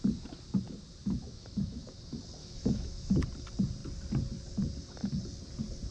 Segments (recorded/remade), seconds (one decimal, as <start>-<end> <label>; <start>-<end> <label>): 0.0-1.0 recorded; 1.0-2.0 remade; 2.0-2.4 recorded; 2.4-3.1 remade; 3.1-5.9 recorded